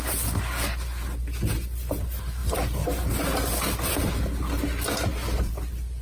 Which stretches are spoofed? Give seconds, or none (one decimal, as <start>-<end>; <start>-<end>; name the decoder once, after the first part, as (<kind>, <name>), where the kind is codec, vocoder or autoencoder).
none